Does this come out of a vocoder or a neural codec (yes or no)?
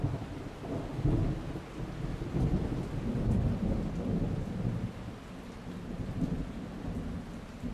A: no